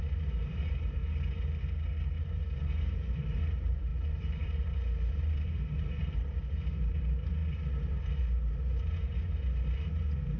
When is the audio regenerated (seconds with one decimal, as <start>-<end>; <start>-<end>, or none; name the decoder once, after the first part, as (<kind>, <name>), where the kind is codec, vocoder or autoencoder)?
0.0-1.0 (vocoder, BigVGAN v2); 2.2-10.4